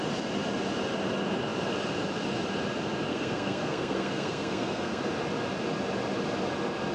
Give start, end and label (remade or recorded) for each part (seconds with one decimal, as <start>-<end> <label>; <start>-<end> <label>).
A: 0.0-3.1 recorded; 3.1-5.0 remade; 5.0-6.9 recorded